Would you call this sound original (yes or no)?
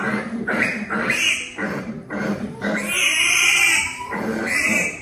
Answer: no